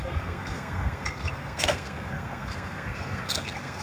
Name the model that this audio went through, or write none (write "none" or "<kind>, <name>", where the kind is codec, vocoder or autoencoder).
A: codec, SNAC